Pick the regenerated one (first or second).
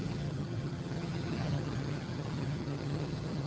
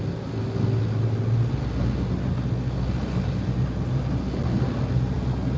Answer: first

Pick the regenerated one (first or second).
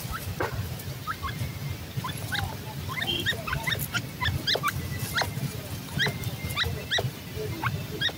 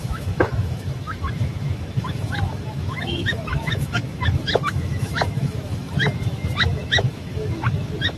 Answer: second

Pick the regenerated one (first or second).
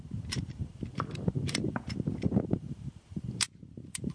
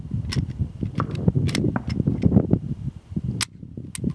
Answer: first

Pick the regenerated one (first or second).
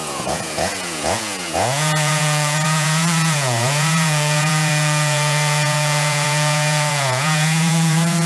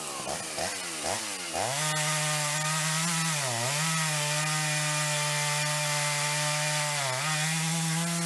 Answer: first